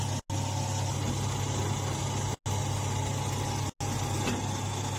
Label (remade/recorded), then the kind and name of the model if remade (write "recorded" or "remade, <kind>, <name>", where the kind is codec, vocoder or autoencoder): recorded